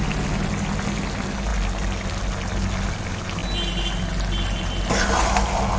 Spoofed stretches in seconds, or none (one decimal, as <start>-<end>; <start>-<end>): none